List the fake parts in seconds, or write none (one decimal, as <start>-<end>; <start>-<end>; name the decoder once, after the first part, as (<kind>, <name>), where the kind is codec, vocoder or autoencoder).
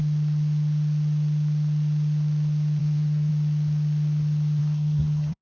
2.8-3.3 (codec, SNAC); 4.6-5.4